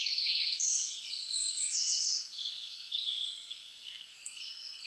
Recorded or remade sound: remade